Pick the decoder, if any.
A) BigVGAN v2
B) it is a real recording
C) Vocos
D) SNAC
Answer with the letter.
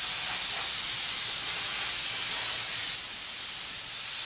B